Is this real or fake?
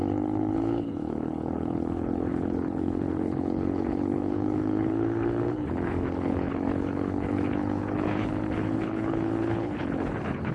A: fake